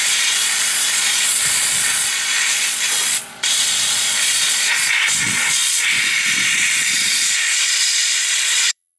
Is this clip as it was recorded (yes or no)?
no